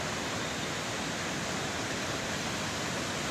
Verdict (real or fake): real